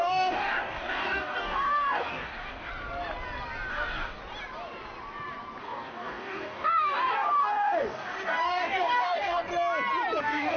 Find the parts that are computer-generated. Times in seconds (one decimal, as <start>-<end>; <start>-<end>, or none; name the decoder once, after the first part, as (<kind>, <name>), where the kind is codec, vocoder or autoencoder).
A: 0.0-2.7 (codec, DAC); 3.7-4.2; 5.6-9.5; 10.2-10.6